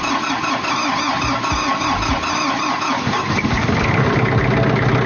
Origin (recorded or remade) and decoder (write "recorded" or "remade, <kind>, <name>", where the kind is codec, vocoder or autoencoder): recorded